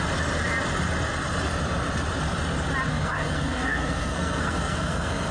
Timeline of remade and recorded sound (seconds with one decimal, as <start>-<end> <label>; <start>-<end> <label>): 0.0-2.9 recorded; 2.9-5.3 remade